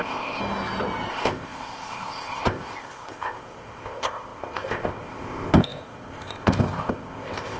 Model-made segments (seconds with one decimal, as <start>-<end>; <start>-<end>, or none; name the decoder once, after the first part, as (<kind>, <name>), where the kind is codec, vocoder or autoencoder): 0.0-0.4 (codec, ZipCodec); 1.1-7.6